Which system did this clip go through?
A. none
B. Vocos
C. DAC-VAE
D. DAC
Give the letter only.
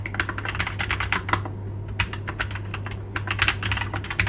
A